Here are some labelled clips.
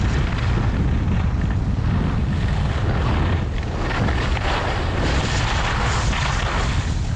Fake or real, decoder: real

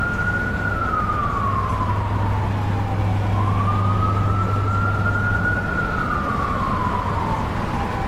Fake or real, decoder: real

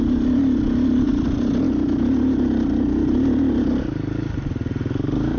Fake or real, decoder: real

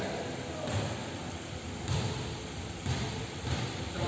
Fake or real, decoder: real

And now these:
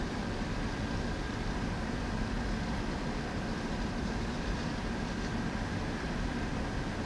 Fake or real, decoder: fake, vocoder, BigVGAN v2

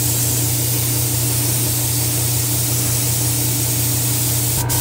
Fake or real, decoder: real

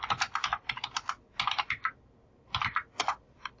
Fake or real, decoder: real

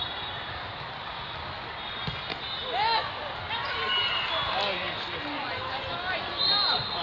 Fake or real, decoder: real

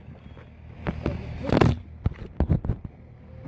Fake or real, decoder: real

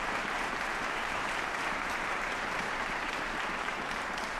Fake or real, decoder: fake, vocoder, BigVGAN v2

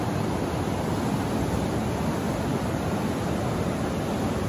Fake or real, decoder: real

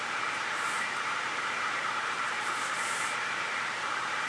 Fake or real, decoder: fake, vocoder, BigVGAN v2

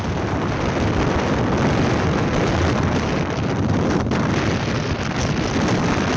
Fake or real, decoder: real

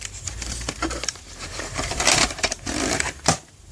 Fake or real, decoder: fake, vocoder, BigVGAN v2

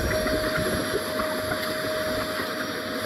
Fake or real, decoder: real